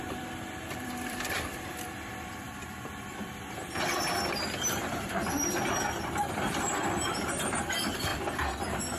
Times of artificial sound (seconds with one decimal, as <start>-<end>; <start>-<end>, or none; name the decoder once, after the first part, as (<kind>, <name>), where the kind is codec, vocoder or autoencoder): 0.0-8.1 (vocoder, BigVGAN v2); 8.6-9.0